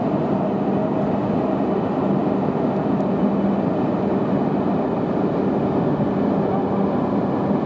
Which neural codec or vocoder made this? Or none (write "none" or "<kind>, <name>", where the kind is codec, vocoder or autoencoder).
none